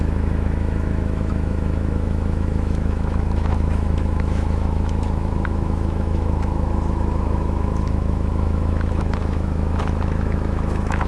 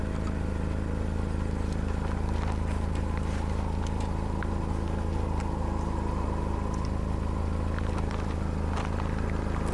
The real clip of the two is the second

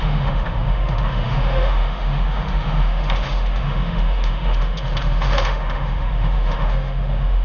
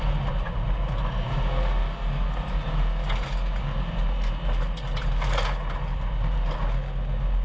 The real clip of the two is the second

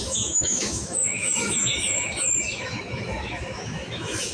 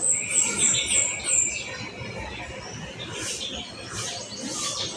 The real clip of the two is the second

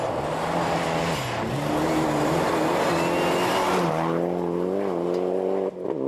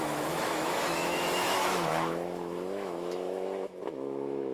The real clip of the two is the first